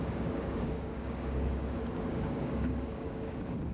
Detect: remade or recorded remade